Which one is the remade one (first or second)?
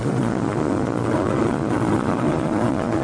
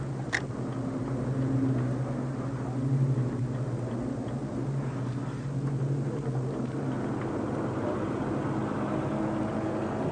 first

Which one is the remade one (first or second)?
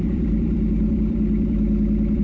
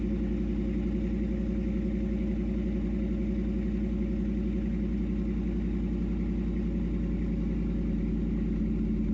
first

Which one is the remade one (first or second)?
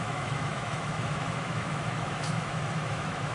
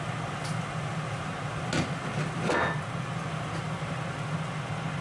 first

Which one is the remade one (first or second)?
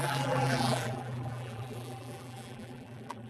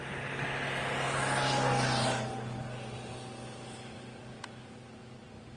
first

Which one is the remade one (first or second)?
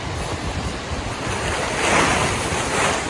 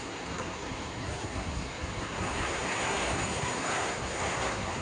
second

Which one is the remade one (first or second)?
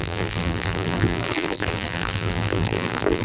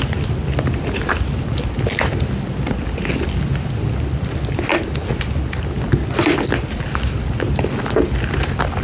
first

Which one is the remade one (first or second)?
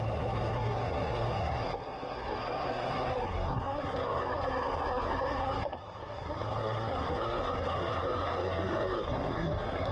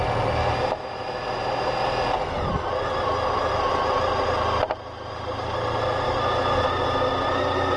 first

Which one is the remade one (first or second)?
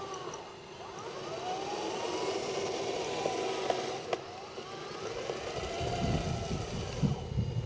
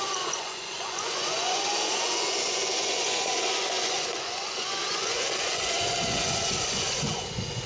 second